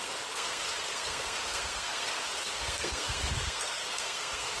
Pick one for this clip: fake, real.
fake